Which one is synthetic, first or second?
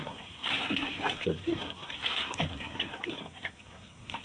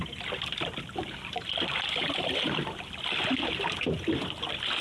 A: first